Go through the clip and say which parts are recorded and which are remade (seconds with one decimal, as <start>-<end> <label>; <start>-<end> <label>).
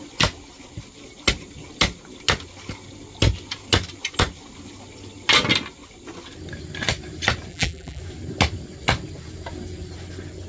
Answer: 0.0-7.5 recorded; 7.5-8.0 remade; 8.0-10.5 recorded